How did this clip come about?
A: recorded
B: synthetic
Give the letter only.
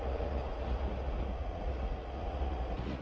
B